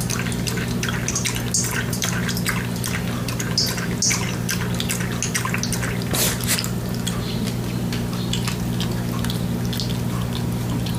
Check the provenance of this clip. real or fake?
real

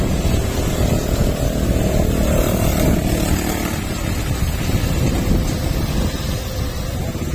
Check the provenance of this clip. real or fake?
real